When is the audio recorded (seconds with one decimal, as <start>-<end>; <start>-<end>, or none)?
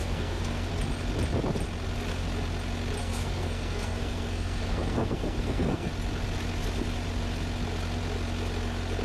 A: 0.7-3.0; 5.9-9.0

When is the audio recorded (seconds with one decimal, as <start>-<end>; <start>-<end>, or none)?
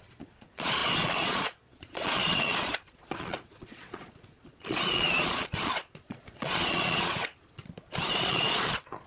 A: 7.6-8.1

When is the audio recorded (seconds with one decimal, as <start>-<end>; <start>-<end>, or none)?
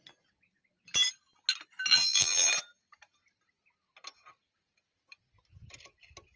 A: 0.0-1.9; 2.5-6.4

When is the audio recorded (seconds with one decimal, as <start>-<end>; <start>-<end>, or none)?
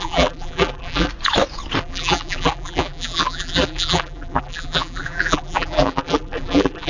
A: 1.1-1.8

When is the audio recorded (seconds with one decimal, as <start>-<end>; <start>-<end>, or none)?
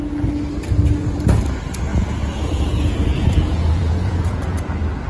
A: 0.0-1.9; 4.6-5.1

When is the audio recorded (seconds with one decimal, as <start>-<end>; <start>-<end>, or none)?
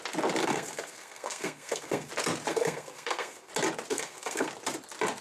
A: 0.0-0.4; 2.1-2.5; 3.5-3.9; 4.5-5.2